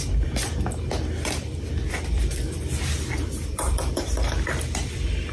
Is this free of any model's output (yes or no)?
no